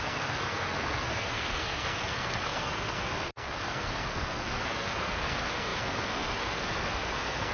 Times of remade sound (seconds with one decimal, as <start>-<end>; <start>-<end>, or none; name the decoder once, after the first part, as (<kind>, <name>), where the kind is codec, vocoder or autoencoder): 0.0-7.5 (codec, SNAC)